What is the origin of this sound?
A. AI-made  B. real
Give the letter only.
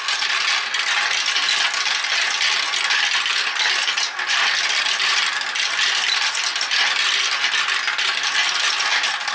B